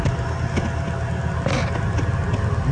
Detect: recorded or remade recorded